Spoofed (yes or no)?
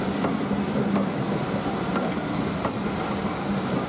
no